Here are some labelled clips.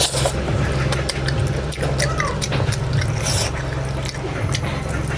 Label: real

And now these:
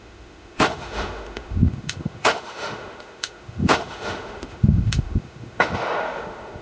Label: fake